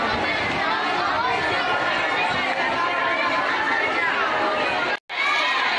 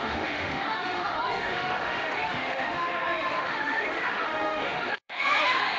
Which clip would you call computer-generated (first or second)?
second